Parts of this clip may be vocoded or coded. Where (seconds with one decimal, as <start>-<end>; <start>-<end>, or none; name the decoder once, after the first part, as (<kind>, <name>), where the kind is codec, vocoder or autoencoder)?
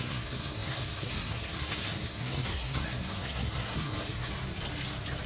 0.0-4.3 (codec, SNAC)